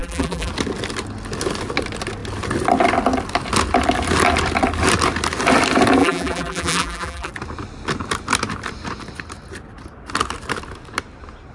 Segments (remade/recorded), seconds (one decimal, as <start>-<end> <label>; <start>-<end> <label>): 0.0-0.5 remade; 0.5-6.0 recorded; 6.0-7.3 remade; 7.3-11.5 recorded

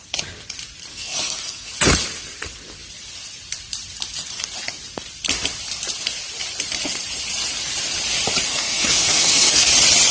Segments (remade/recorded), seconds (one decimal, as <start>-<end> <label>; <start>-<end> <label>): 0.0-0.9 recorded; 0.9-1.7 remade; 1.7-8.5 recorded; 8.5-9.7 remade; 9.7-10.1 recorded

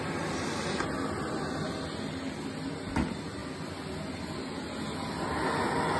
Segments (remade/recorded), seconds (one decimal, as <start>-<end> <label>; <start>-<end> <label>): 0.0-6.0 recorded

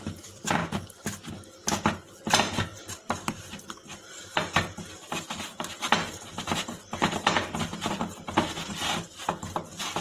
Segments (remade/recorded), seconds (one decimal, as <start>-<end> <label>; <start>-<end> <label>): 0.0-0.6 remade; 0.6-2.9 recorded; 2.9-10.0 remade

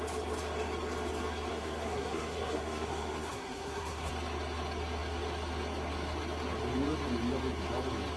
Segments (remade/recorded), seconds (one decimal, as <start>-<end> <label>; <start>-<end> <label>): 0.0-1.5 recorded; 1.5-4.1 remade; 4.1-8.2 recorded

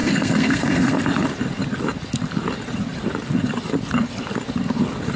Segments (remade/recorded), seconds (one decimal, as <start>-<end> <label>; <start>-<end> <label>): 0.0-0.9 remade; 0.9-5.2 recorded

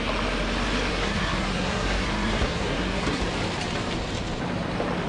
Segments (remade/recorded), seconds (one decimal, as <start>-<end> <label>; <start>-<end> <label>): 0.0-0.9 recorded; 0.9-3.2 remade; 3.2-5.1 recorded